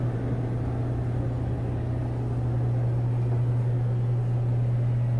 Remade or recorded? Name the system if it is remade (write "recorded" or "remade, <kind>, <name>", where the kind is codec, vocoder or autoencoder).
recorded